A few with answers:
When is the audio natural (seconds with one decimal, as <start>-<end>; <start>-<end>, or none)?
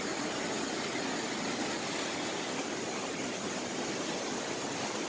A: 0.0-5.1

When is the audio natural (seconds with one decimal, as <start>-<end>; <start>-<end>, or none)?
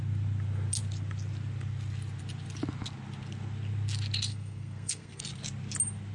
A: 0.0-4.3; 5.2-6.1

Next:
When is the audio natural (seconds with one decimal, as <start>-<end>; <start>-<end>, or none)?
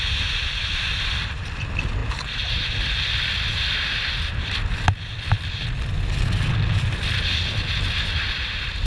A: 0.0-8.9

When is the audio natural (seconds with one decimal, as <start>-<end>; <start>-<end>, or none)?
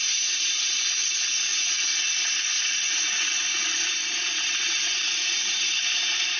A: 0.0-6.4